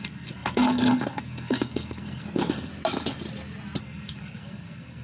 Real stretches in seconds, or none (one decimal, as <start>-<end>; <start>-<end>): 2.7-3.8